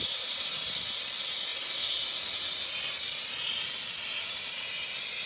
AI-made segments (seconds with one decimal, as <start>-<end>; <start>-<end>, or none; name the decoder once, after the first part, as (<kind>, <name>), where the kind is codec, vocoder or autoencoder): none